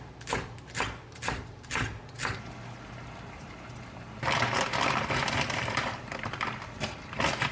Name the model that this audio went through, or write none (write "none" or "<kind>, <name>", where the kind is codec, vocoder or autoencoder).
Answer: none